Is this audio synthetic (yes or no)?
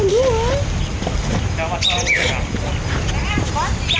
no